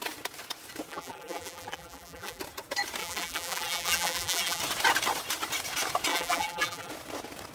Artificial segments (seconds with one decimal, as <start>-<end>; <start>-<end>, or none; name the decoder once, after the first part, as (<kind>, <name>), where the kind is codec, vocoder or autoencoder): 0.9-2.4 (vocoder, BigVGAN v2); 3.0-4.6; 6.1-6.9